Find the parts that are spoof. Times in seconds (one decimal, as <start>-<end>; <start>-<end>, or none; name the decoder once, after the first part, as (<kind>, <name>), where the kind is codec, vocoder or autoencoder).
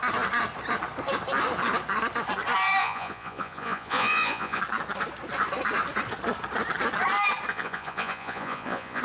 2.8-4.6 (vocoder, Vocos); 7.5-9.0